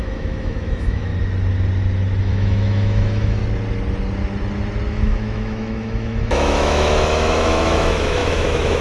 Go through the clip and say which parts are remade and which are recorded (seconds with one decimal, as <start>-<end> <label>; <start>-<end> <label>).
0.0-1.1 remade; 1.1-2.2 recorded; 2.2-3.4 remade; 3.4-4.9 recorded; 4.9-8.8 remade